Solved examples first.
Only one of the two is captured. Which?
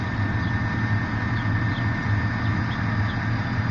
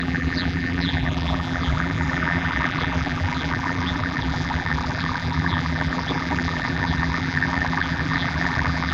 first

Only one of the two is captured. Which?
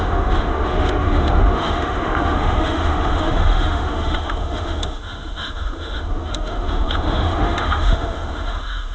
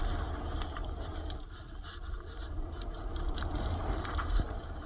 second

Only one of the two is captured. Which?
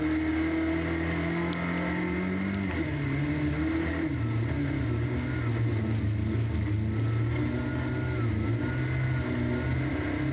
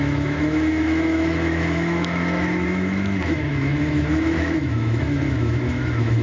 first